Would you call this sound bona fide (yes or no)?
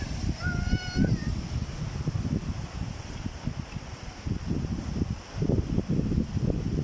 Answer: yes